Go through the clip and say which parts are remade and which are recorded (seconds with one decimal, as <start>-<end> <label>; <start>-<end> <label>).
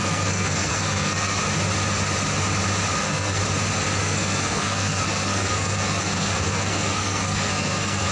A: 0.0-1.4 remade; 1.4-3.0 recorded; 3.0-3.4 remade; 3.4-4.0 recorded; 4.0-8.1 remade